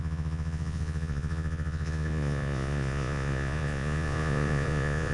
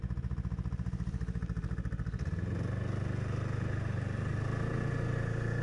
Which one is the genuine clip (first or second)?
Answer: second